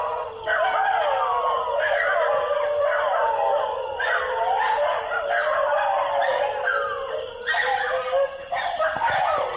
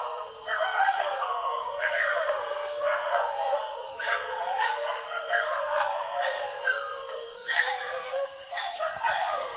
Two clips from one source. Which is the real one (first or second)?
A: first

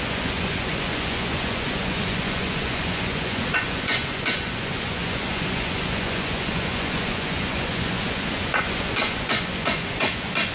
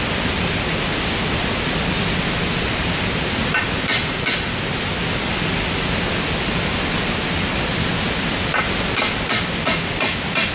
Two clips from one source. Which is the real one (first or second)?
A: second